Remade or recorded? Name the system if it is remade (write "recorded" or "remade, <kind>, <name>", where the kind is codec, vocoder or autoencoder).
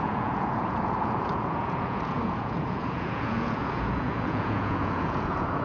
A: remade, vocoder, Vocos